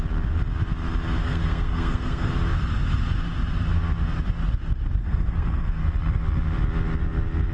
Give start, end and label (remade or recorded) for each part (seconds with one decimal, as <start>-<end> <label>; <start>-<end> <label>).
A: 0.0-1.2 recorded; 1.2-2.3 remade; 2.3-5.0 recorded; 5.0-5.8 remade; 5.8-7.5 recorded